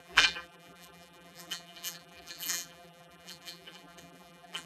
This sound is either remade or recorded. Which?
remade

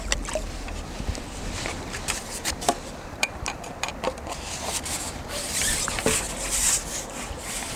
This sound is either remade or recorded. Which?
remade